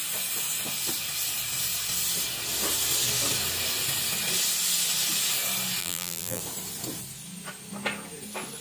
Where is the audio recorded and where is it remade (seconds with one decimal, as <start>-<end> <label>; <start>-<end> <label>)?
0.0-5.8 recorded; 5.8-6.4 remade; 6.4-8.6 recorded